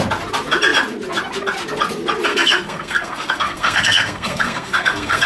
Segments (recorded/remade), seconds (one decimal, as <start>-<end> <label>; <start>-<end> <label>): 0.0-2.3 recorded; 2.3-5.3 remade